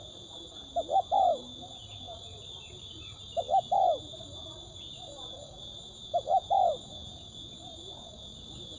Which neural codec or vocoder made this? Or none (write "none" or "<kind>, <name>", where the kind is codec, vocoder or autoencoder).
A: none